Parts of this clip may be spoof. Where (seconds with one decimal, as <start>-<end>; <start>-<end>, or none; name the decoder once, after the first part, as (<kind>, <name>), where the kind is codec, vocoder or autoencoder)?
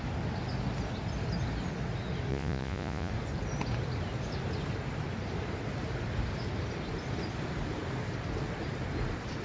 2.3-3.1 (vocoder, Vocos)